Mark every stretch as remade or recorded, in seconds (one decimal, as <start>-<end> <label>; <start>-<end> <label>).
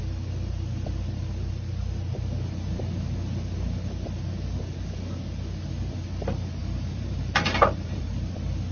0.0-6.6 recorded; 6.6-8.1 remade; 8.1-8.7 recorded